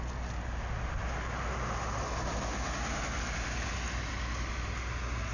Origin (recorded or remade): recorded